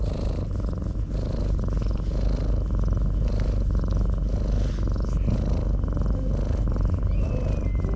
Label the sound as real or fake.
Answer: real